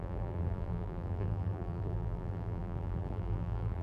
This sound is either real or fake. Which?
fake